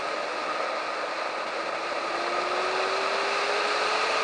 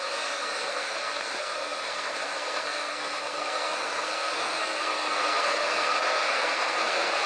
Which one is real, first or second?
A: first